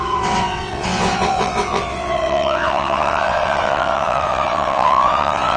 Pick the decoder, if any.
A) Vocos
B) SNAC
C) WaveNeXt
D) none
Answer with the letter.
C